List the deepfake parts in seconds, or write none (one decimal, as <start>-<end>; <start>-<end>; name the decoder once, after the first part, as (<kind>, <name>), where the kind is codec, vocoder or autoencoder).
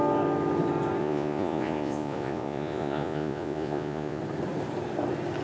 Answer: 1.0-4.2 (vocoder, Vocos)